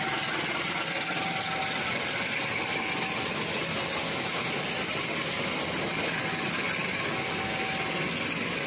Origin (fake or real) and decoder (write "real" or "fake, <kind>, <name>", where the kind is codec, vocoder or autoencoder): real